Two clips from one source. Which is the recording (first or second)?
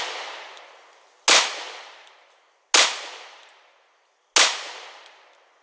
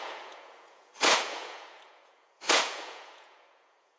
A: first